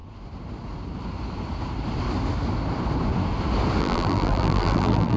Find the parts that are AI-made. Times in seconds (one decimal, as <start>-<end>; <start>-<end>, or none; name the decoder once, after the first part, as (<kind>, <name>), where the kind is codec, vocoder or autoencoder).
3.8-5.2 (vocoder, BigVGAN v2)